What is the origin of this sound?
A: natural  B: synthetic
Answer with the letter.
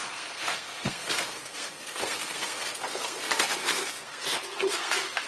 B